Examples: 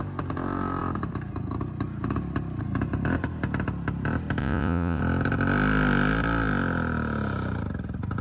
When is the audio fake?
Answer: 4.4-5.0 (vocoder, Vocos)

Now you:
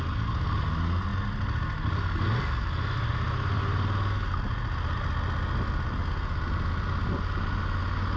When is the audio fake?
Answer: none